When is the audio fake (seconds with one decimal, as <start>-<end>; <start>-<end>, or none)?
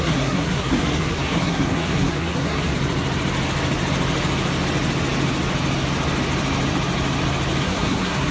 0.0-2.7; 7.6-8.3